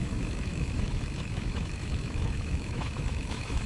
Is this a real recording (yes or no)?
no